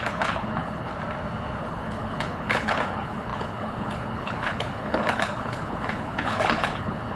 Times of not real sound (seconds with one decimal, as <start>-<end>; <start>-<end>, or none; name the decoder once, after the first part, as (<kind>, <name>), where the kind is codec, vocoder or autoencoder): 0.0-0.9 (codec, HILCodec); 1.6-7.2